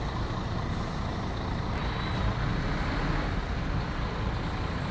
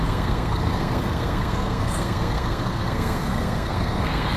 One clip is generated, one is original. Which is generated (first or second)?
second